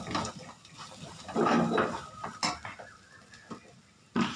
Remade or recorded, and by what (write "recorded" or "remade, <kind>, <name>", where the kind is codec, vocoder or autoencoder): recorded